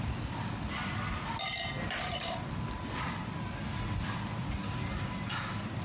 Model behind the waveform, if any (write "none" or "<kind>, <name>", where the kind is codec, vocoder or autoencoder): none